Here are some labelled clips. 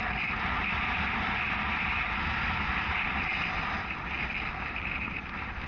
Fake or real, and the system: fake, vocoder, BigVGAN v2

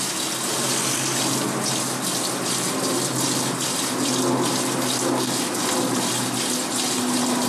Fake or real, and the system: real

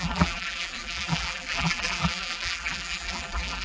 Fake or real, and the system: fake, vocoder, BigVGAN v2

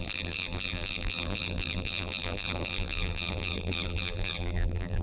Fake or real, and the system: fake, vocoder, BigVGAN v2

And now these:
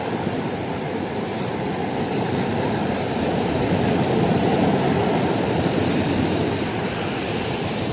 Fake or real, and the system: fake, vocoder, BigVGAN v2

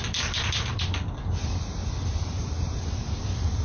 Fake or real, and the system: fake, vocoder, BigVGAN v2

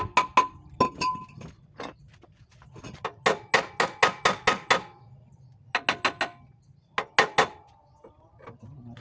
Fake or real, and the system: real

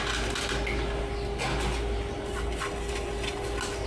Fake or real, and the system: real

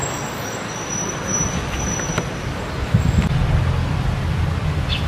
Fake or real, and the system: real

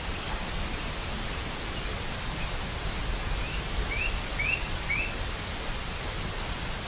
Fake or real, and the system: real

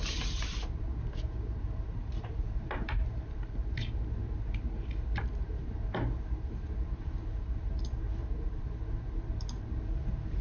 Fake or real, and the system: fake, vocoder, BigVGAN v2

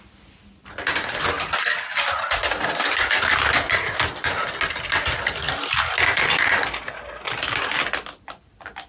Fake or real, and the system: real